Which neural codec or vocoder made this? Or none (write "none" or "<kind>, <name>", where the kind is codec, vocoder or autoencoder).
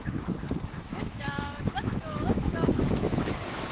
autoencoder, DAC-VAE